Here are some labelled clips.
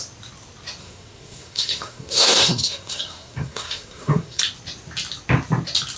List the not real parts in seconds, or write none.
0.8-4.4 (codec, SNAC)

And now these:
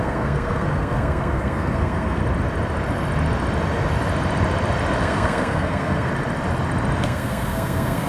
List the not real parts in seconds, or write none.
0.0-2.2 (codec, SNAC); 5.0-6.1; 7.0-8.1

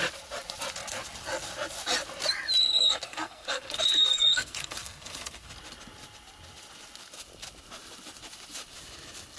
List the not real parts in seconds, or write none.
2.6-5.5 (codec, SNAC)